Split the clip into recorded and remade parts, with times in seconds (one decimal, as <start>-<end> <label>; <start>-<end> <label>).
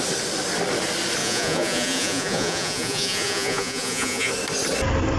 0.0-1.2 recorded; 1.2-4.3 remade; 4.3-5.2 recorded